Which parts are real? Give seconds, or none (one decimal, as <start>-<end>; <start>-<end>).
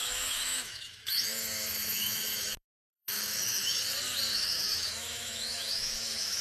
3.8-4.3